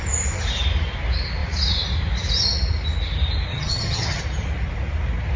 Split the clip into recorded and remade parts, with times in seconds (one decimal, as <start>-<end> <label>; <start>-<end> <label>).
0.0-3.5 recorded; 3.5-4.2 remade; 4.2-5.4 recorded